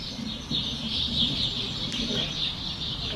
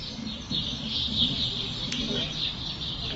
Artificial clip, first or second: first